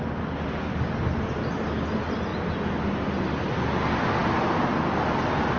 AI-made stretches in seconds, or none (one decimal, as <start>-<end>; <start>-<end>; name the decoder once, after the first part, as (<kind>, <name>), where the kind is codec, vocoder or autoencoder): none